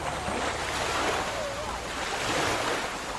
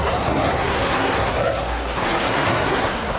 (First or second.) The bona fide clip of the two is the first